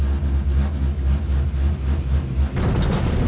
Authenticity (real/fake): real